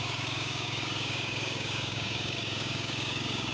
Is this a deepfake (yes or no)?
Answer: yes